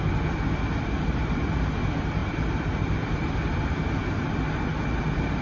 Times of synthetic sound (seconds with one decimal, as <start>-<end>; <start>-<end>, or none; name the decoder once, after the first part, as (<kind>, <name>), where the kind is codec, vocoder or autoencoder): none